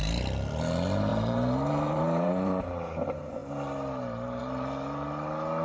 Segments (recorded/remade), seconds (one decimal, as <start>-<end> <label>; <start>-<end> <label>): 0.0-1.1 recorded; 1.1-2.6 remade; 2.6-5.6 recorded